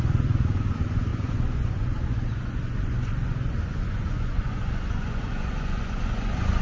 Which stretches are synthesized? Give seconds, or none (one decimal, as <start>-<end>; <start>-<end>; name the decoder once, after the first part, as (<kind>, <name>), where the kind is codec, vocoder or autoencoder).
0.0-6.6 (vocoder, Vocos)